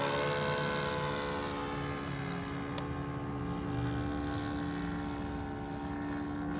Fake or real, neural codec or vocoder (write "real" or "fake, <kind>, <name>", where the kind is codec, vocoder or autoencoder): real